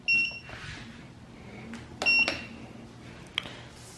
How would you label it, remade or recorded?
recorded